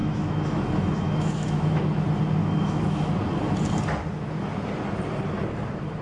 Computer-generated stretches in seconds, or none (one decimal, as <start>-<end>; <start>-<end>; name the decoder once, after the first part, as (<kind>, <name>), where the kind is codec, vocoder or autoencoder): 0.0-1.8 (autoencoder, DAC-VAE); 2.4-3.1